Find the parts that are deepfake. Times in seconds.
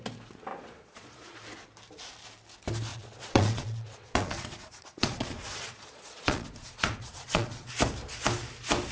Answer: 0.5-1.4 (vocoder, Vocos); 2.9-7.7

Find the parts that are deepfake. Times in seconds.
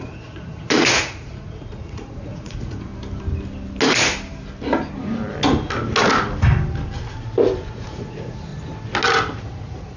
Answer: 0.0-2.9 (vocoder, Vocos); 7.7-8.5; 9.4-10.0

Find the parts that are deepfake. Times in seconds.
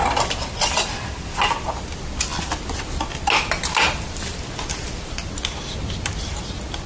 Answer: none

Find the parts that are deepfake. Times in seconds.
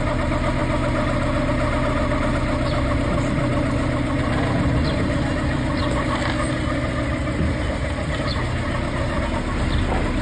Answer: none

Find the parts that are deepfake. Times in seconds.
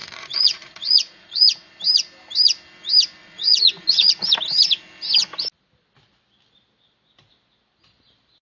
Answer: 0.0-1.7 (vocoder, Vocos); 3.2-4.1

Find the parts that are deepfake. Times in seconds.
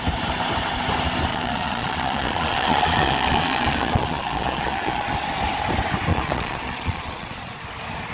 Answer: 1.3-5.1 (vocoder, Vocos); 6.1-7.6